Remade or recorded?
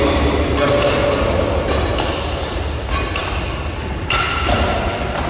recorded